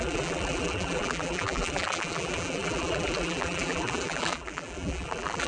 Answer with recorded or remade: remade